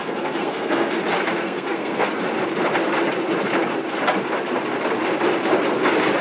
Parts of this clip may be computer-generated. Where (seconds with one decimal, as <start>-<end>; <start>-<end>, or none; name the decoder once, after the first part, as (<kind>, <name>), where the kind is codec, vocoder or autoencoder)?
0.0-1.0 (codec, SNAC); 1.4-2.1